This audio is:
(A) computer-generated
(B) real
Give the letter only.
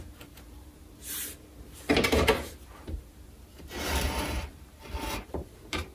A